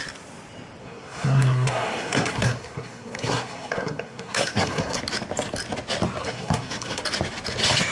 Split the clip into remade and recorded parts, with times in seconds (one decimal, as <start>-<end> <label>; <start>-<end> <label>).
0.0-0.8 recorded; 0.8-5.0 remade; 5.0-6.2 recorded; 6.2-7.0 remade; 7.0-7.9 recorded